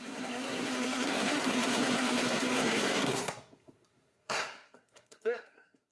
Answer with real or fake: fake